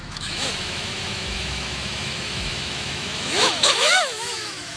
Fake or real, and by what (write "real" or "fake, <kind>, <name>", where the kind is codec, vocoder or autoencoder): fake, autoencoder, DAC-VAE